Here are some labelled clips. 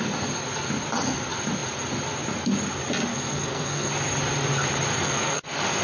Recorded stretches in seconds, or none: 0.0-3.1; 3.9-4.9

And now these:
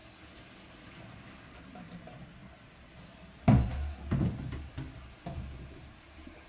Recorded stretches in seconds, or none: 0.0-1.5; 2.4-2.9

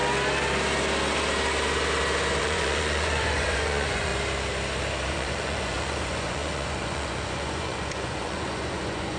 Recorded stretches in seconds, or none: 0.0-2.4; 4.1-5.1

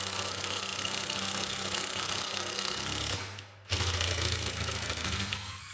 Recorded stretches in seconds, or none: none

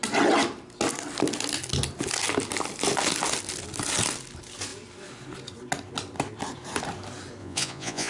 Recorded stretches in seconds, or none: 0.0-7.4

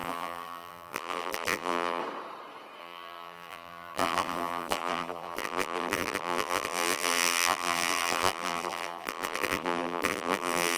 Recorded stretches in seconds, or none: 2.0-2.8

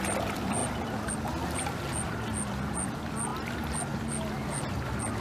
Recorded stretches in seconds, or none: 0.0-5.2